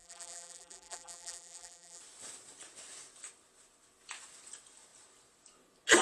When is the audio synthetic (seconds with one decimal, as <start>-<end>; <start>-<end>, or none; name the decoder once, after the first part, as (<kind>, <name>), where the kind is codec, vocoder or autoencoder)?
0.0-2.0 (vocoder, BigVGAN v2)